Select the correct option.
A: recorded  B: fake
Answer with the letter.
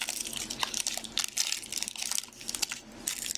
A